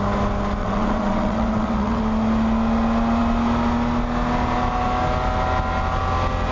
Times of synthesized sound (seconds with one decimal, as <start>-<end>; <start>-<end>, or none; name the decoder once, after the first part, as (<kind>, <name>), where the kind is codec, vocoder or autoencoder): 0.6-2.0 (vocoder, WaveNeXt)